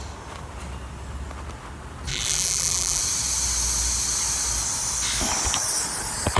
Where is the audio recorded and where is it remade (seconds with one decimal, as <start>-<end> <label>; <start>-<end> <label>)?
0.0-2.1 recorded; 2.1-3.0 remade; 3.0-6.4 recorded